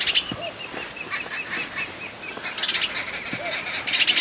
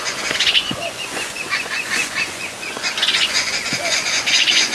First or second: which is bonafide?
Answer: first